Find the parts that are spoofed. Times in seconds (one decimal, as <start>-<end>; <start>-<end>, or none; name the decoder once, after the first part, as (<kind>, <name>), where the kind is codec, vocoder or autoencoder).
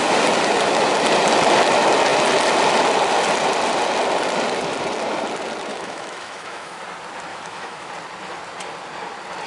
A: 5.7-6.8 (autoencoder, DAC-VAE); 7.3-7.9